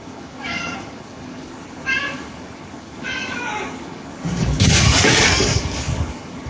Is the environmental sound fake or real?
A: fake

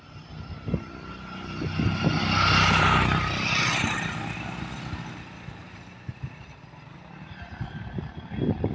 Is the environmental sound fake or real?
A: real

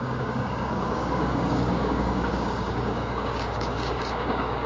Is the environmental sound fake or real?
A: fake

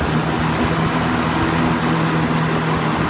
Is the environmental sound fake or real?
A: real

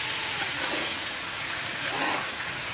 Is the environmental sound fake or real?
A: fake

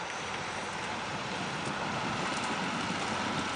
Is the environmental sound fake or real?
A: real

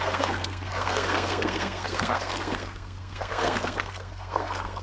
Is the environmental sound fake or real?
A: fake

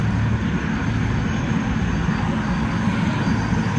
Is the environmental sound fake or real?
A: real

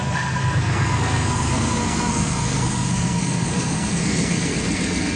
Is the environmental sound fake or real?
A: fake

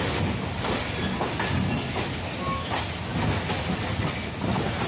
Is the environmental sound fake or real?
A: real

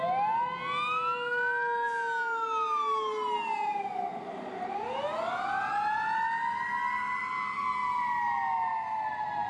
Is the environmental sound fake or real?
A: real